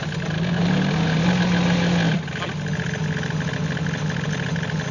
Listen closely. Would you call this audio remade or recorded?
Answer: recorded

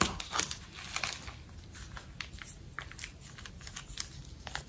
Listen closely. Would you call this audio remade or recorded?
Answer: recorded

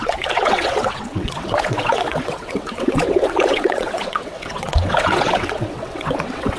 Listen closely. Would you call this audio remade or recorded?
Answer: remade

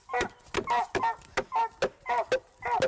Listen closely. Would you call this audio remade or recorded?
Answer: recorded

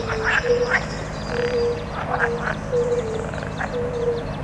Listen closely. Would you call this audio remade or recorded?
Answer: recorded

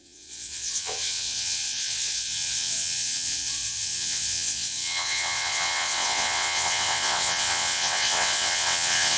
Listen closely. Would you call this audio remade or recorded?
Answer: remade